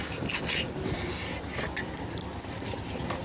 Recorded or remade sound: recorded